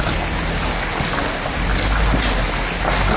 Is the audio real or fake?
real